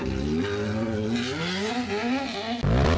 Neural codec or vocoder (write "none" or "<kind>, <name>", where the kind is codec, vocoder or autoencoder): none